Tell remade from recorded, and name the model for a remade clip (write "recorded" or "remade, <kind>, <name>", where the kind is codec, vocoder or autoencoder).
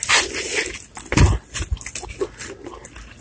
recorded